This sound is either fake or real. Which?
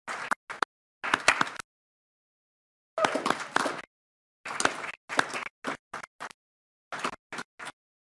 real